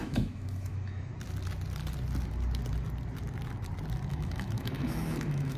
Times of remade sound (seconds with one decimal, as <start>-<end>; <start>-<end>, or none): 0.0-1.1; 4.1-5.6